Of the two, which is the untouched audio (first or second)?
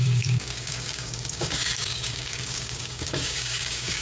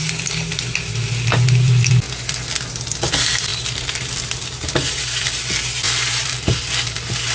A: second